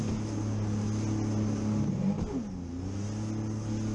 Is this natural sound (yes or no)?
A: yes